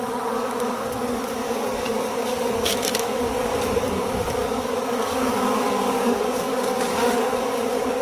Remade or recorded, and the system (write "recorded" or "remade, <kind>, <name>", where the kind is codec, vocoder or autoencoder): remade, codec, DAC